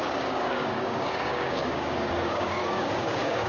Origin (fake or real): fake